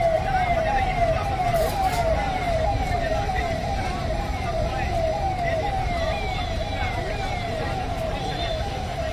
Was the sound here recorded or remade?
remade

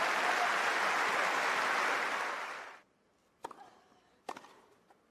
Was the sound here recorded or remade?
recorded